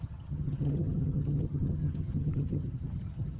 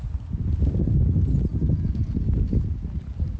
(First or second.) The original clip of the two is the second